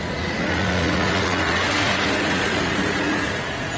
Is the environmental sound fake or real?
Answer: fake